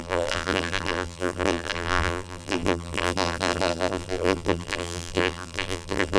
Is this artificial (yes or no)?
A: yes